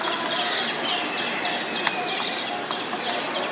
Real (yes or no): yes